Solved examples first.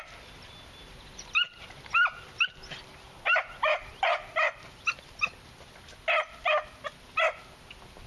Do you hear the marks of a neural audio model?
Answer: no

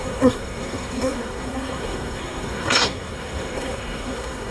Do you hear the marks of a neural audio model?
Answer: yes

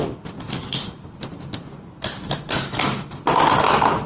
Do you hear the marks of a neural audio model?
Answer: no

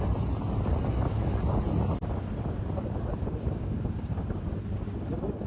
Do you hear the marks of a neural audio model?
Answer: no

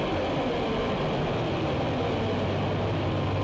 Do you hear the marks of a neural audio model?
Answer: no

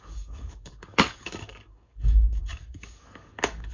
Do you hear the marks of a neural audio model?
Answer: yes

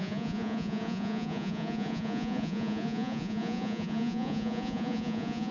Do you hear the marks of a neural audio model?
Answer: yes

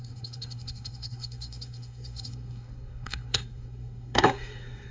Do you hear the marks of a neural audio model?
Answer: yes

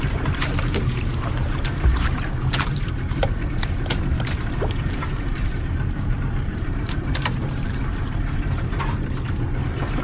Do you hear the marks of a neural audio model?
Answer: yes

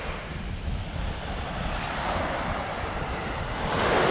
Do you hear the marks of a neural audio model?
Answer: no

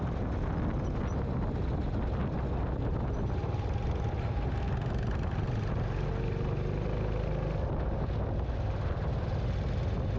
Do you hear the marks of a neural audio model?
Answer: no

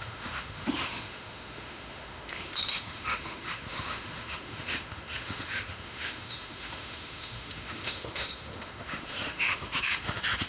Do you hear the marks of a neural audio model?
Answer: yes